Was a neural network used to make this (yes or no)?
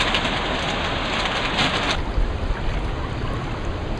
no